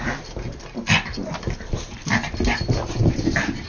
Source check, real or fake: real